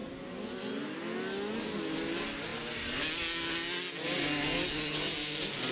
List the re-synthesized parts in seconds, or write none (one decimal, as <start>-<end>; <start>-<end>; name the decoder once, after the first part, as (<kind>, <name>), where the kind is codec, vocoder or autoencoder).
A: none